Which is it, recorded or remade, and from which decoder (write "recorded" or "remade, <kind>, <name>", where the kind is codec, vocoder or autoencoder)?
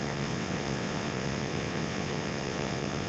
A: remade, vocoder, WaveNeXt